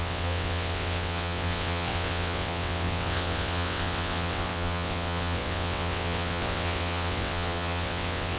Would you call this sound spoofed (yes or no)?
yes